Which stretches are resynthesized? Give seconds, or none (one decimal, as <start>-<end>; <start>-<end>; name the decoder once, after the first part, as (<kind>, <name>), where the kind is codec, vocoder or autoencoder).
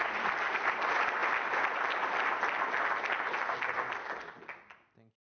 none